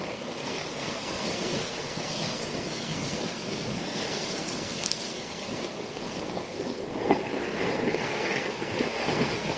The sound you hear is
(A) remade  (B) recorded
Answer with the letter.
A